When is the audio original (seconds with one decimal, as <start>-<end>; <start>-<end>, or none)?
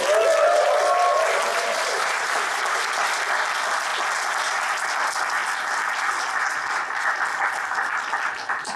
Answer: 0.0-1.5; 2.6-8.8